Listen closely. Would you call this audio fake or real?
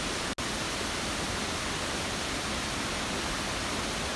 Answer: real